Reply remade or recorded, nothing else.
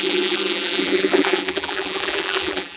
remade